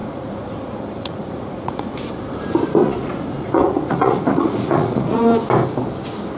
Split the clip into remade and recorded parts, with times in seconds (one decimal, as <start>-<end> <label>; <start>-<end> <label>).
0.0-2.1 remade; 2.1-2.8 recorded; 2.8-5.2 remade; 5.2-6.4 recorded